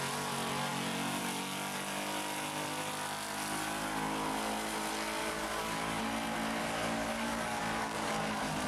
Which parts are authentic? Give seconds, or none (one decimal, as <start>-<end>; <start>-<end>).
0.0-5.2; 6.0-6.6; 8.1-8.7